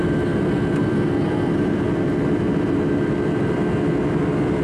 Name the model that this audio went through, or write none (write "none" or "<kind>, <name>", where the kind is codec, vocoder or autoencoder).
vocoder, BigVGAN v2